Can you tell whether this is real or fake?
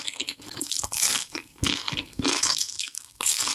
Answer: fake